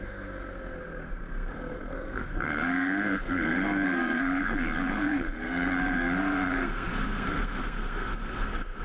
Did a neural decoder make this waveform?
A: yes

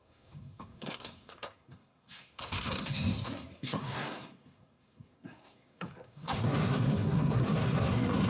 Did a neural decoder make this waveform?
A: yes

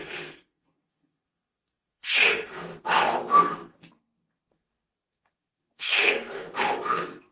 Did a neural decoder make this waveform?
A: yes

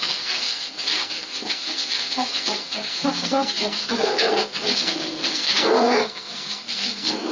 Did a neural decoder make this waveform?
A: yes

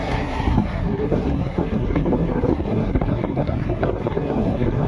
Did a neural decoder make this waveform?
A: yes